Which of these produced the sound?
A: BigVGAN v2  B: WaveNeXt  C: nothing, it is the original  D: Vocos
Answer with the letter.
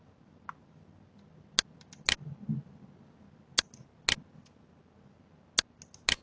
C